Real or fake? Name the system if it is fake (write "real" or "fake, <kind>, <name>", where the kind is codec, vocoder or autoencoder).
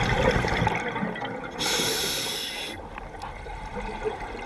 real